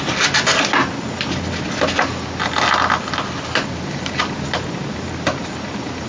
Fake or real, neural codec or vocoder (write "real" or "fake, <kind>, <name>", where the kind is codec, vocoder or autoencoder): real